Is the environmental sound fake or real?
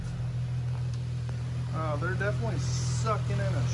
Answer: real